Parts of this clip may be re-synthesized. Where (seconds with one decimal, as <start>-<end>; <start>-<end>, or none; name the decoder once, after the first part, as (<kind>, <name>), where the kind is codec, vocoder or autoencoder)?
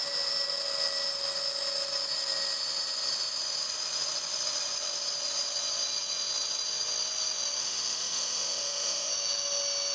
7.6-9.1 (autoencoder, DAC-VAE)